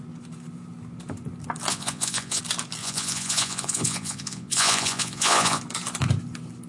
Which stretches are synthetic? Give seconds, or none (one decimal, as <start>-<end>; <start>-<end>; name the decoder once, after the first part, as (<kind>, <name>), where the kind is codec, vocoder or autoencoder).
1.7-2.4 (vocoder, Vocos); 2.8-5.6